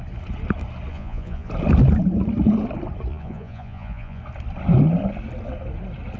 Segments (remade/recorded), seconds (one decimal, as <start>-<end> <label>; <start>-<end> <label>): 0.0-0.9 recorded; 0.9-1.5 remade; 1.5-3.1 recorded; 3.1-4.2 remade; 4.2-6.2 recorded